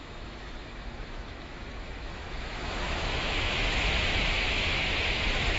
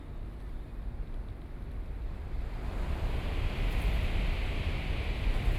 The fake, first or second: first